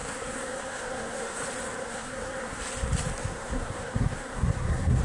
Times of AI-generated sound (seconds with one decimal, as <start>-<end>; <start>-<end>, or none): 0.0-1.4; 1.8-2.6; 3.2-5.0